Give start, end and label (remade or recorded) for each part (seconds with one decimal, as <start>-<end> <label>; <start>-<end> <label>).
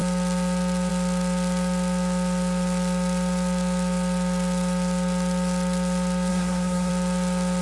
0.0-6.3 recorded; 6.3-6.9 remade; 6.9-7.6 recorded